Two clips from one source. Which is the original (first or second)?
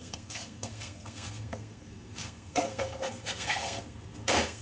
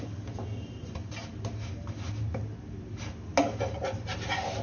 second